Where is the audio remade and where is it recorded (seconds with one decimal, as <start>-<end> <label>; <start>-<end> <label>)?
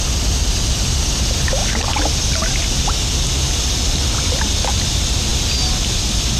0.0-6.4 recorded